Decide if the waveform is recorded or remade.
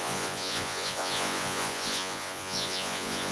remade